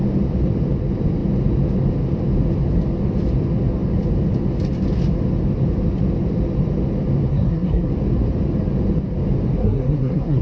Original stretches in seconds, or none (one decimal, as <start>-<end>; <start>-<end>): 0.0-7.3; 7.9-9.6